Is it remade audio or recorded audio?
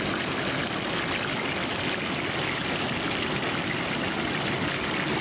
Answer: recorded